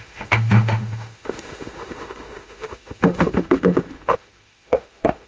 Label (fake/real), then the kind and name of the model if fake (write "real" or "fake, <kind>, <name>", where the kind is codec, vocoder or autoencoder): fake, autoencoder, DAC-VAE